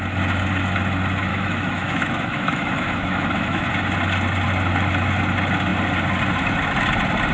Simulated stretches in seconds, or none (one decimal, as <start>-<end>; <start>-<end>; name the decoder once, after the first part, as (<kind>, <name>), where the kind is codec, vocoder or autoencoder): 1.3-3.7 (autoencoder, DAC-VAE)